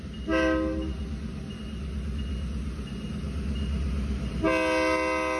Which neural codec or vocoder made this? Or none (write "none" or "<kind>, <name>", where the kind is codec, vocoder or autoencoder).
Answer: none